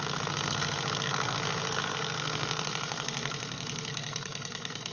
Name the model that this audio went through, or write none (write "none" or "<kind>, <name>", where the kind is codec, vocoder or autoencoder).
codec, SNAC